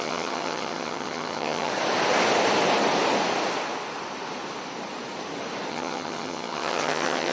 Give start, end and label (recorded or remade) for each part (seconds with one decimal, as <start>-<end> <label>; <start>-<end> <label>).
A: 0.0-1.7 remade; 1.7-5.7 recorded; 5.7-7.3 remade

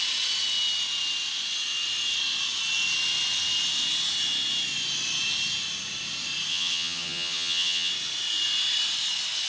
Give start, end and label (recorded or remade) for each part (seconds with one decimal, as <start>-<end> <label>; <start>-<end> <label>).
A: 0.0-6.5 recorded; 6.5-7.9 remade; 7.9-9.5 recorded

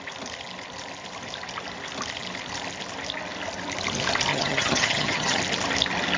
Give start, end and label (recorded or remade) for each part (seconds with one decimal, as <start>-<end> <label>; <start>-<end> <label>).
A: 0.0-4.3 recorded; 4.3-5.4 remade; 5.4-6.2 recorded

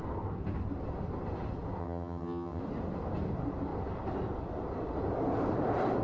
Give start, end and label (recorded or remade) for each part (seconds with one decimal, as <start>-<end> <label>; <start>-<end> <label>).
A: 0.0-1.8 recorded; 1.8-2.6 remade; 2.6-6.0 recorded

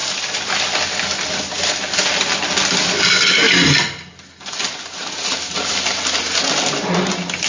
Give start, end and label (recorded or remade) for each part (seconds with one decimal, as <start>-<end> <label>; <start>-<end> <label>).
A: 0.0-7.5 recorded

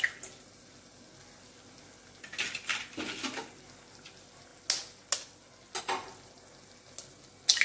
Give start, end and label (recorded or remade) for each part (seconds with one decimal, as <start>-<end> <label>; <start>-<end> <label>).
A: 0.0-7.6 recorded